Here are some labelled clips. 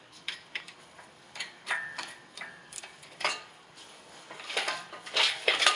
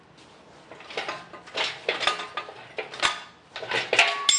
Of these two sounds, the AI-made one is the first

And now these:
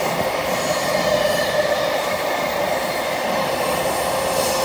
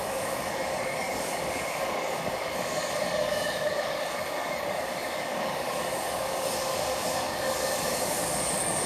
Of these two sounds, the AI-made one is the second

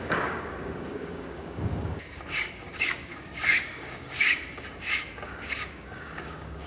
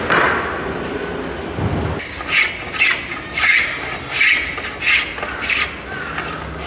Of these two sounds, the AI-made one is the first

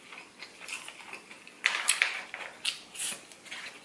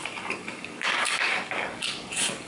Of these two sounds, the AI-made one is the second